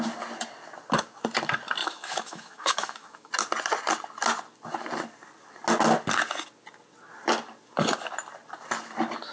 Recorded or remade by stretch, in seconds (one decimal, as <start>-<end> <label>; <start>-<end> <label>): 0.0-1.8 recorded; 1.8-3.3 remade; 3.3-9.3 recorded